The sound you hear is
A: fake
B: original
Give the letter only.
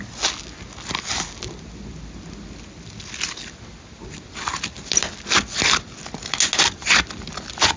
B